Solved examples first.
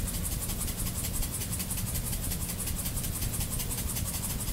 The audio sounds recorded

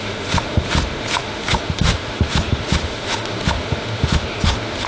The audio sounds remade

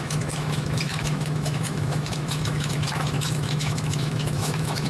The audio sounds remade